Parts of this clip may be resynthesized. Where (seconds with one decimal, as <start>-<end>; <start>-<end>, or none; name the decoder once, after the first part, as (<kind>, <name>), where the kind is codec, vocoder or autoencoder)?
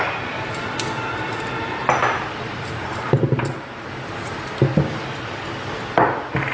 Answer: 1.8-4.5 (vocoder, BigVGAN v2)